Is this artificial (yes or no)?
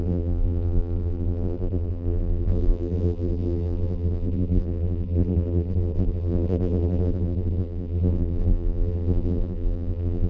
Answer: yes